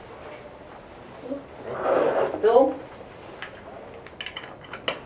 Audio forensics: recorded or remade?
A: recorded